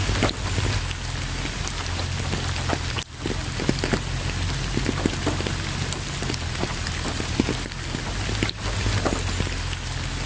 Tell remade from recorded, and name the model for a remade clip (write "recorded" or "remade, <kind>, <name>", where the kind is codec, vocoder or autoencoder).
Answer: recorded